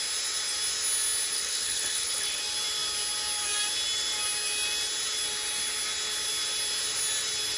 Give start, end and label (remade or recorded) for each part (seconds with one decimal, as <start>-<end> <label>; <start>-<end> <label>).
0.0-1.3 recorded; 1.3-2.4 remade; 2.4-7.6 recorded